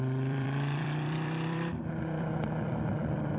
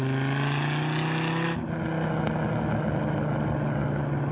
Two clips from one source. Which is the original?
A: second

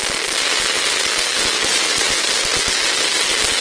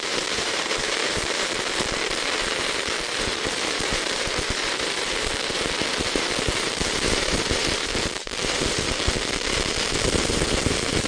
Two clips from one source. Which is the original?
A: first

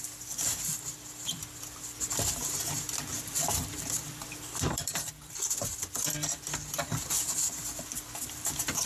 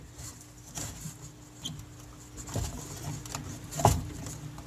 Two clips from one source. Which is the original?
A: second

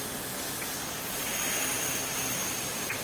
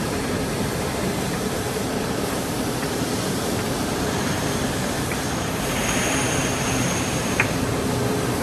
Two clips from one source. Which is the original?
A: first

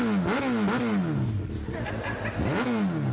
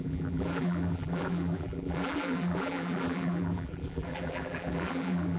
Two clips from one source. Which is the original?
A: first